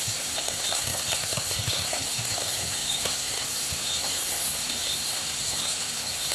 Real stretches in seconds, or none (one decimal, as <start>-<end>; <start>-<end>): none